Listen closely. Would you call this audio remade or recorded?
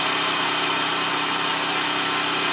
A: recorded